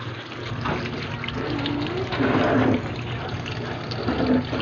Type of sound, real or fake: real